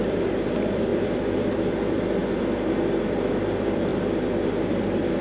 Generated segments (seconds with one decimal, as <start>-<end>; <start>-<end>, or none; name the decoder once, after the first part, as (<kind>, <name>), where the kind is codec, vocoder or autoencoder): 0.0-2.2 (vocoder, BigVGAN v2); 3.3-3.9; 4.7-5.2